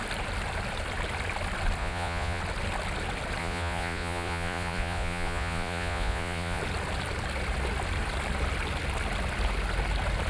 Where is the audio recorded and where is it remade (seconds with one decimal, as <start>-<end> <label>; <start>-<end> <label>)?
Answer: 0.0-1.8 recorded; 1.8-2.4 remade; 2.4-3.4 recorded; 3.4-6.6 remade; 6.6-10.3 recorded